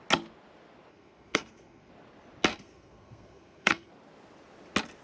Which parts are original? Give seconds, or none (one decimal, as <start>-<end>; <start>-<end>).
0.0-0.9; 1.9-2.5; 3.9-5.0

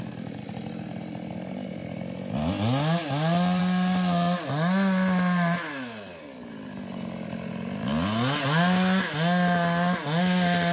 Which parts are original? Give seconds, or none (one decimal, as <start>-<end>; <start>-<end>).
0.0-10.7

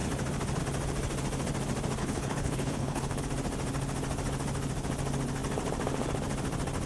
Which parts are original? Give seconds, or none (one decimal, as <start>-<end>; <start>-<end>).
0.0-2.0; 3.2-6.9

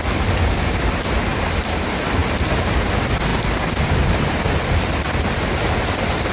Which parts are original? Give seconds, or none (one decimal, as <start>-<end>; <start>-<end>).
0.0-1.3; 2.7-6.3